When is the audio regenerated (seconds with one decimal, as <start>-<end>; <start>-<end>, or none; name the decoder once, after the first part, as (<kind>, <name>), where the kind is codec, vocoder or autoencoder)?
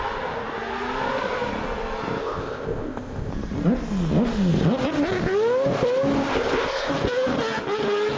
2.2-3.3 (codec, ZipCodec); 6.3-6.9